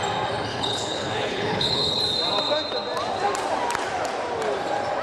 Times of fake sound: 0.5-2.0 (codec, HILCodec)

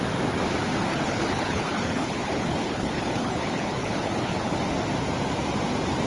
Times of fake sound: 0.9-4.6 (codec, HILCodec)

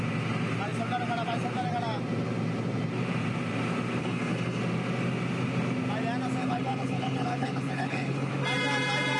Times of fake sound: 4.0-4.6 (codec, HILCodec); 6.4-8.3

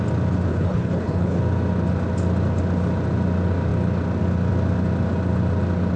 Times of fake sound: 0.5-1.4 (codec, HILCodec)

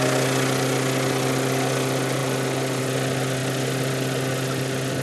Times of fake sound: none

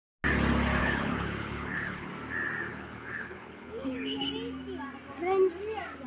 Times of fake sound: 0.8-2.1 (codec, HILCodec); 2.7-4.3